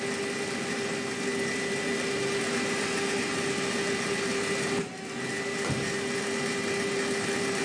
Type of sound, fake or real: real